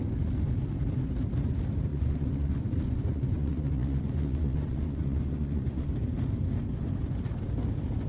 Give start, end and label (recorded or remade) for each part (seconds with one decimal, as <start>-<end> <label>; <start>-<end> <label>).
0.0-1.9 recorded; 1.9-5.9 remade; 5.9-8.1 recorded